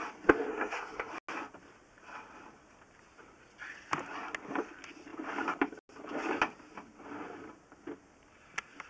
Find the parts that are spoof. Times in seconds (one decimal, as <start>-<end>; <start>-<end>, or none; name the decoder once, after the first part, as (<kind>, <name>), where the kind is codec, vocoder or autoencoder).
0.5-1.1 (codec, SNAC)